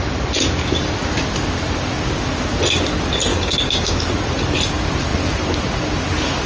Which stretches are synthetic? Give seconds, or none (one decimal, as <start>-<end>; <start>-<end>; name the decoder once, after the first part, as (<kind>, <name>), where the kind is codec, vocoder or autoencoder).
3.3-4.0 (codec, DAC)